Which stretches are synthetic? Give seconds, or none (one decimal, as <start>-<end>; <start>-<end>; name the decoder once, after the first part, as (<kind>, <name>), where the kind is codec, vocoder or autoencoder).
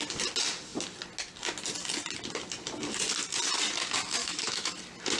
4.2-4.7 (autoencoder, DAC-VAE)